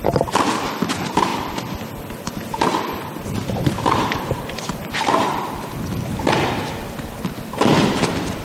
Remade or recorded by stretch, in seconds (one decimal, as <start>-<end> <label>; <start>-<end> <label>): 0.0-1.3 remade; 1.3-2.3 recorded; 2.3-8.4 remade